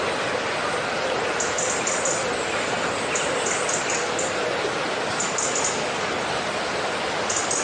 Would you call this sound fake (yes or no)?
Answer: no